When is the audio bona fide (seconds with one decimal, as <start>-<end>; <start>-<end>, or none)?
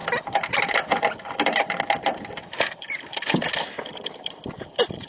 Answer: 0.0-5.1